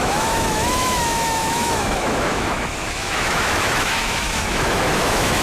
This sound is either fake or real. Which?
fake